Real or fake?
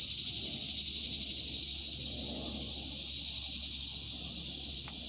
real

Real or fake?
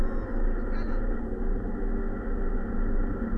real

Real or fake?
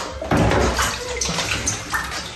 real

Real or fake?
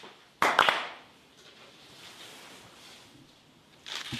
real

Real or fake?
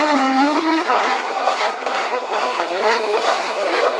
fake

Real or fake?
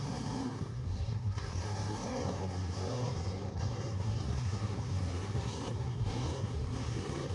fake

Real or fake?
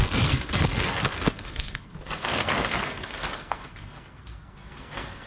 fake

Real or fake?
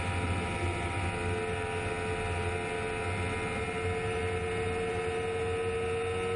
real